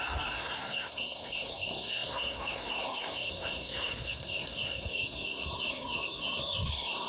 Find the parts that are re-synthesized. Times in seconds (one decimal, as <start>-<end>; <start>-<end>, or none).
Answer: 0.0-7.1